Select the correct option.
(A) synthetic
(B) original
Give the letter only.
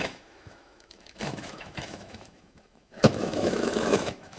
A